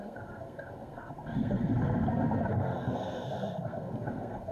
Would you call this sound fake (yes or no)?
yes